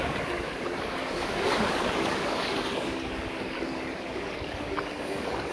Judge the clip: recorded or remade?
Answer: remade